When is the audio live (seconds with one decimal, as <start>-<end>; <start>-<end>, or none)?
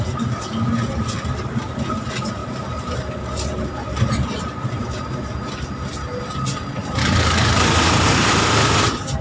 0.0-7.0; 7.5-9.2